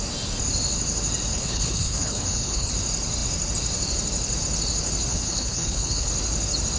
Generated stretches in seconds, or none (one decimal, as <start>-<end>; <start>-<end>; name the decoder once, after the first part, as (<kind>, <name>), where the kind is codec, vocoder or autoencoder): 1.3-2.7 (codec, HILCodec); 5.1-6.1